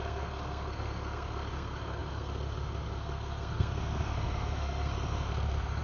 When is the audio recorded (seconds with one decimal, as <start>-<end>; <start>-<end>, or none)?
none